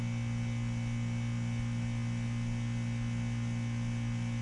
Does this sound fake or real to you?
real